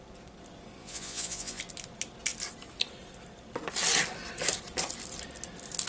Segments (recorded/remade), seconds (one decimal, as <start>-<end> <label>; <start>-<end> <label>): 0.0-0.8 recorded; 0.8-1.6 remade; 1.6-5.9 recorded